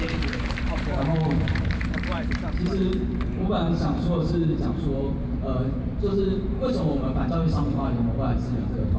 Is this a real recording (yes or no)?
no